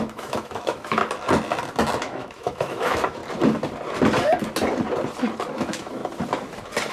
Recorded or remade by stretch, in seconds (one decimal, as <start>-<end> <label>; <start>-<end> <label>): 0.0-1.0 remade; 1.0-2.0 recorded; 2.0-3.2 remade; 3.2-5.5 recorded; 5.5-6.0 remade; 6.0-6.9 recorded